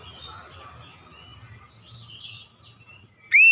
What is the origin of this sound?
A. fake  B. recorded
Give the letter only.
B